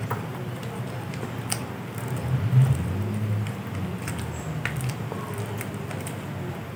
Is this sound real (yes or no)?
yes